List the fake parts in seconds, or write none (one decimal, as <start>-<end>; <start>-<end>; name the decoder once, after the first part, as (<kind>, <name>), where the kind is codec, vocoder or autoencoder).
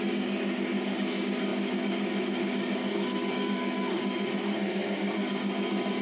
0.0-6.0 (codec, DAC)